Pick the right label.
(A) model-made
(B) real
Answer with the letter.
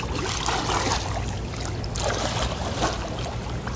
B